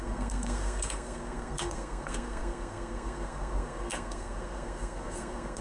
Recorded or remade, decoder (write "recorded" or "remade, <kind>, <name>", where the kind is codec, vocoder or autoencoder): remade, codec, SNAC